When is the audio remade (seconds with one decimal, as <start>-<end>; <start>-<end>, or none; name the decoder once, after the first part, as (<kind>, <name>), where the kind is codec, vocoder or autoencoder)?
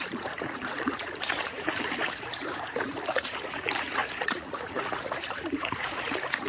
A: 0.0-6.5 (vocoder, Vocos)